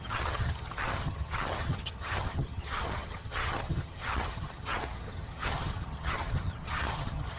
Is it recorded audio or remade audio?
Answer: remade